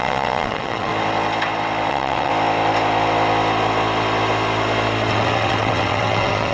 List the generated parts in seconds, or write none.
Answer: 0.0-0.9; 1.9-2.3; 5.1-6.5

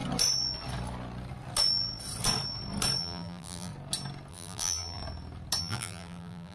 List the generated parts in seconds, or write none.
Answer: 3.0-3.7; 4.3-5.0; 5.6-6.5